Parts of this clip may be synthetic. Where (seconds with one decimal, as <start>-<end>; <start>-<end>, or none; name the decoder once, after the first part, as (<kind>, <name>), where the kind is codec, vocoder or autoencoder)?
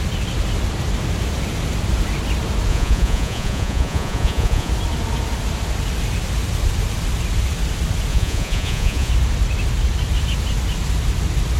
2.7-4.7 (vocoder, Vocos); 8.1-9.1